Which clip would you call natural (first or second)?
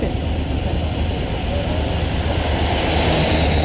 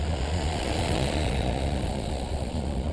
first